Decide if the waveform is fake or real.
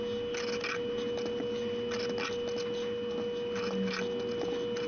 real